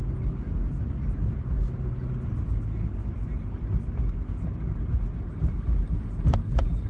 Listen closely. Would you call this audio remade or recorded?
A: recorded